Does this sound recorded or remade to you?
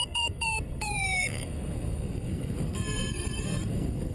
remade